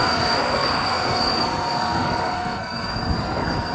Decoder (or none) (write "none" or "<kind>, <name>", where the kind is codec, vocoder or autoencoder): codec, SNAC